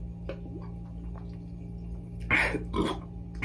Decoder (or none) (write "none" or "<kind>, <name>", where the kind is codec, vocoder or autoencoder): none